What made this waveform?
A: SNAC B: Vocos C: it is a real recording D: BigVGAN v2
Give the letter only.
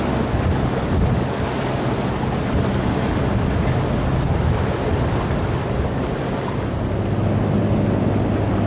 C